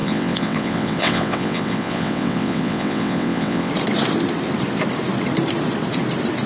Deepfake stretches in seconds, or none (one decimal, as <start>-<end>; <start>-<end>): 0.0-3.7